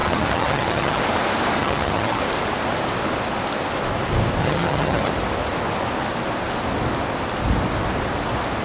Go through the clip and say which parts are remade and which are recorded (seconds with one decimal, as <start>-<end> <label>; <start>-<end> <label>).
0.0-1.0 remade; 1.0-1.6 recorded; 1.6-2.2 remade; 2.2-4.4 recorded; 4.4-5.1 remade; 5.1-8.6 recorded